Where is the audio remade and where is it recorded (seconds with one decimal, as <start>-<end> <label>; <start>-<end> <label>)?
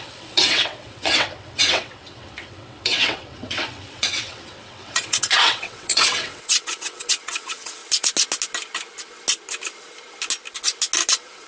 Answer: 0.0-7.8 remade; 7.8-11.1 recorded; 11.1-11.5 remade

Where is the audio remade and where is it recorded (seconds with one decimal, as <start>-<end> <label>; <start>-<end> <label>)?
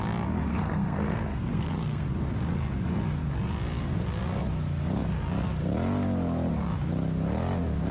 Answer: 0.0-0.5 recorded; 0.5-2.1 remade; 2.1-7.9 recorded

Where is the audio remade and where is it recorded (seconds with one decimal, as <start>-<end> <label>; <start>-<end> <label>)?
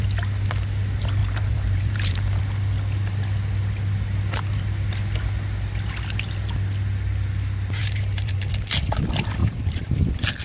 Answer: 0.0-1.2 recorded; 1.2-2.4 remade; 2.4-7.8 recorded; 7.8-8.5 remade; 8.5-9.4 recorded; 9.4-10.0 remade; 10.0-10.4 recorded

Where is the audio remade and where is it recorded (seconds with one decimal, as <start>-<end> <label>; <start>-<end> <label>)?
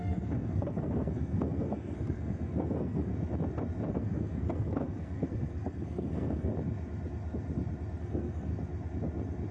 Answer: 0.0-3.1 remade; 3.1-3.9 recorded; 3.9-6.5 remade; 6.5-8.0 recorded; 8.0-8.5 remade; 8.5-9.5 recorded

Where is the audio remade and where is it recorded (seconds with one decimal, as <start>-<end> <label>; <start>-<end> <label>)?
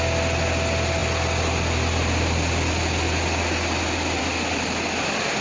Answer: 0.0-5.4 recorded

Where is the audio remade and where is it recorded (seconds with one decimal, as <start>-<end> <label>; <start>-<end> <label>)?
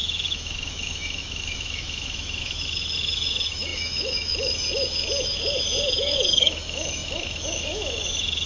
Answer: 0.0-8.5 remade